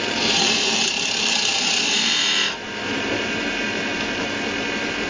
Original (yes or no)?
no